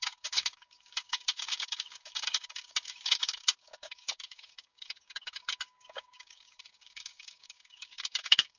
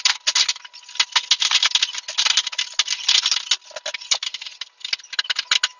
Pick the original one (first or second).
second